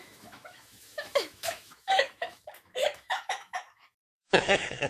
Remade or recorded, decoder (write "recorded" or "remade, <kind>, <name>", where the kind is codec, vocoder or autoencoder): remade, autoencoder, DAC-VAE